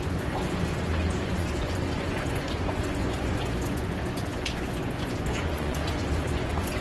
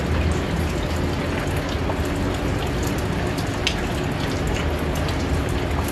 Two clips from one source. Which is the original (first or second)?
second